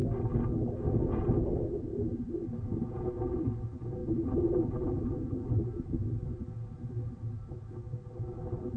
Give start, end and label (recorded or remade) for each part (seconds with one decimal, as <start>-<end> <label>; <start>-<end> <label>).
0.0-8.8 recorded